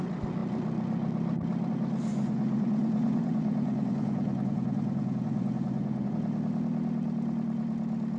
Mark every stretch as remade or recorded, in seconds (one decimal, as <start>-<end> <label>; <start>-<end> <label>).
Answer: 0.0-2.1 recorded; 2.1-6.1 remade; 6.1-8.2 recorded